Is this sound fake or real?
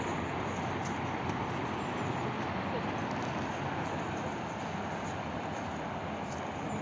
real